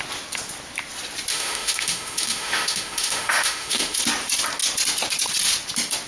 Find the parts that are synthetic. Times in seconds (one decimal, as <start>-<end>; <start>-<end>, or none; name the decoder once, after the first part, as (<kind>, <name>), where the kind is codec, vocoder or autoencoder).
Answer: 1.3-4.0 (autoencoder, DAC-VAE)